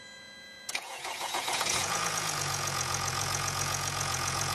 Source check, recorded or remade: remade